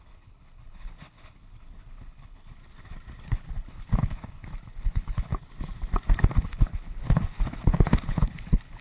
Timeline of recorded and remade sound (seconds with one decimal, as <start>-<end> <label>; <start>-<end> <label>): 0.0-2.6 remade; 2.6-3.2 recorded; 3.2-5.3 remade; 5.3-6.4 recorded; 6.4-8.8 remade